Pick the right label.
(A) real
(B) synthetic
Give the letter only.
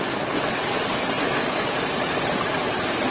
A